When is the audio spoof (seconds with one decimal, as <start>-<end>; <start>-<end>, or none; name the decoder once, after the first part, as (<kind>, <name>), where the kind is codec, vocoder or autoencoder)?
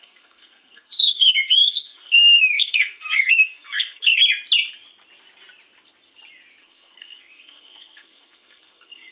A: 0.0-4.2 (codec, SNAC); 6.6-9.1